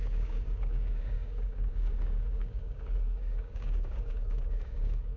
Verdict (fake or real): fake